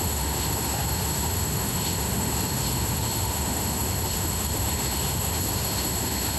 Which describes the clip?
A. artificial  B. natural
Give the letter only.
A